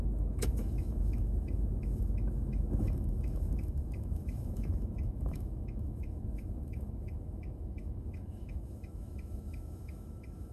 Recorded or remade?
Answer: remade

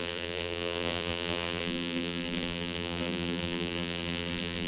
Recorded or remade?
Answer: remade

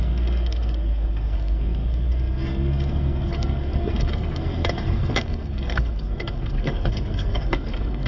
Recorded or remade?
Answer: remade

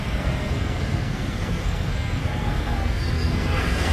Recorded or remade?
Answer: remade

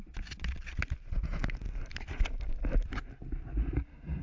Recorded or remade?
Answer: recorded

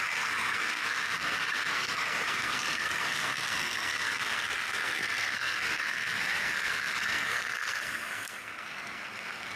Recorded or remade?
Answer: remade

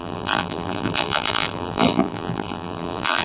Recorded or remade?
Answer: remade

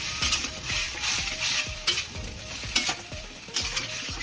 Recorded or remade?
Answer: remade